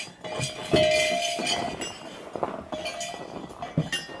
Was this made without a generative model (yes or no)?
yes